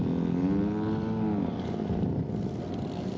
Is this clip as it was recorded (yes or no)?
yes